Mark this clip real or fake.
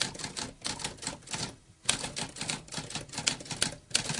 real